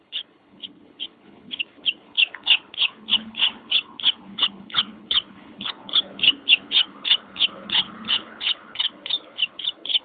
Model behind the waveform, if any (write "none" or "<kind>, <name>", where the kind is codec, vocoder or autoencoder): codec, HILCodec